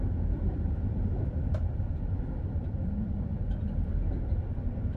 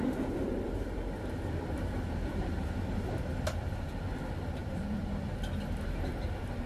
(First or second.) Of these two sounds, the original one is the second